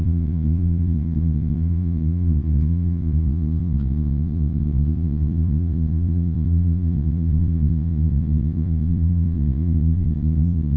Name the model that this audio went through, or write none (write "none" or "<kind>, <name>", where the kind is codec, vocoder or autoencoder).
vocoder, Vocos